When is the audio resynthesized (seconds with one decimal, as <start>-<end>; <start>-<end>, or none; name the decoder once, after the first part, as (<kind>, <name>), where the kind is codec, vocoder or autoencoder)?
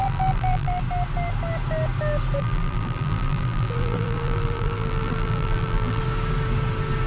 0.0-0.8 (vocoder, BigVGAN v2); 2.4-6.0